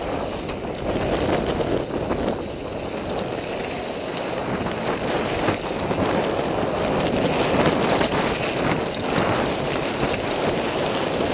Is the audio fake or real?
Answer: real